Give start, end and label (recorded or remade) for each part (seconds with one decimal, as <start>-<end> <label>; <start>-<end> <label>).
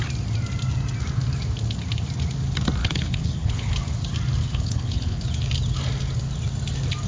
0.0-2.8 recorded; 2.8-3.7 remade; 3.7-4.4 recorded; 4.4-5.2 remade; 5.2-7.1 recorded